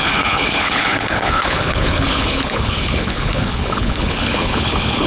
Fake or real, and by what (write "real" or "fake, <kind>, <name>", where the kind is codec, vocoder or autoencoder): fake, codec, HILCodec